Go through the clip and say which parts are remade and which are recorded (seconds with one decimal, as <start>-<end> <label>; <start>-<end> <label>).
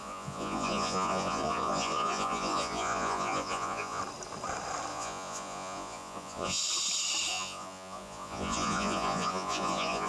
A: 0.0-4.0 remade; 4.0-4.9 recorded; 4.9-6.6 remade; 6.6-7.3 recorded; 7.3-10.1 remade